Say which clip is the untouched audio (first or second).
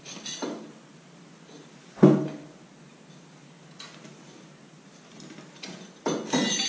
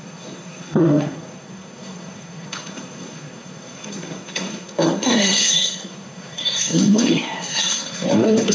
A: first